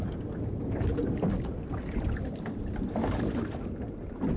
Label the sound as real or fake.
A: real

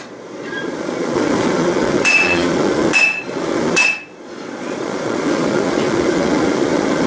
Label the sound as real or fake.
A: fake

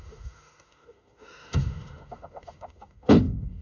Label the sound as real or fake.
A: fake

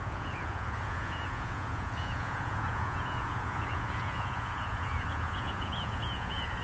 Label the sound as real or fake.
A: fake